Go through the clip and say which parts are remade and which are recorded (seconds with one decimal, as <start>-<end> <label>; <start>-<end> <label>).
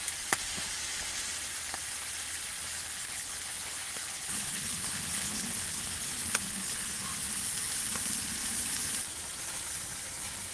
0.0-2.8 recorded; 2.8-6.9 remade; 6.9-10.5 recorded